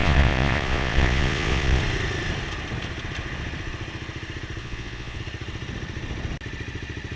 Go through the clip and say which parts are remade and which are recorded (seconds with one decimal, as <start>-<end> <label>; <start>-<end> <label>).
0.0-1.8 remade; 1.8-4.6 recorded; 4.6-5.2 remade; 5.2-7.2 recorded